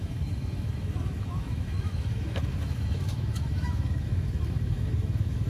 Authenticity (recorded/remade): remade